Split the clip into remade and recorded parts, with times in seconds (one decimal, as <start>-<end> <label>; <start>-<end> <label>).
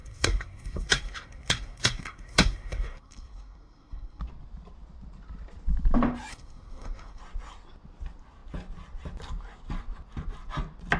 0.0-4.2 remade; 4.2-6.3 recorded; 6.3-7.2 remade; 7.2-11.0 recorded